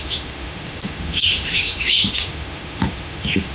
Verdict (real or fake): fake